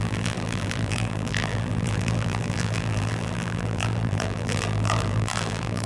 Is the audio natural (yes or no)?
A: no